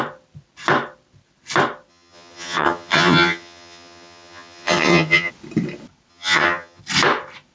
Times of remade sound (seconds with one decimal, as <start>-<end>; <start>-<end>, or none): 1.9-5.3; 6.1-6.8